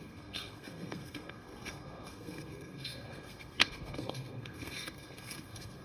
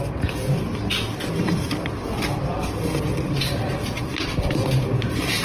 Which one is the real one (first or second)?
second